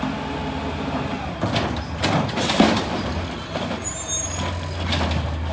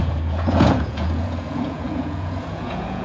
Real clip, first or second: first